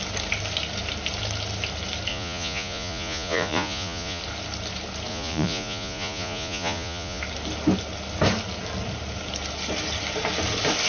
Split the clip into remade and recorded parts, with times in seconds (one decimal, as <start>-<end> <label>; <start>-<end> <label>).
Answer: 0.0-2.1 recorded; 2.1-4.2 remade; 4.2-5.1 recorded; 5.1-7.2 remade; 7.2-10.9 recorded